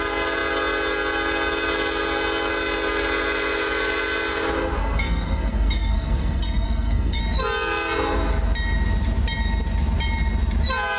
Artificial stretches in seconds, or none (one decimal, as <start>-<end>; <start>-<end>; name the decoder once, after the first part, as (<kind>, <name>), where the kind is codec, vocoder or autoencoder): 4.8-7.2 (codec, SNAC)